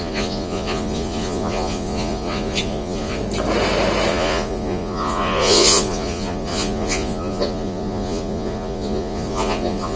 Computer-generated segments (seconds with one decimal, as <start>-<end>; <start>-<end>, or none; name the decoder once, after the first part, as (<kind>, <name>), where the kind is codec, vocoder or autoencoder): 0.0-3.2 (vocoder, Vocos); 4.1-10.0